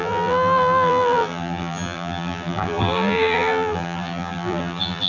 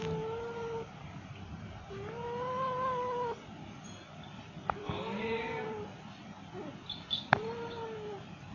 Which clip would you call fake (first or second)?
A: first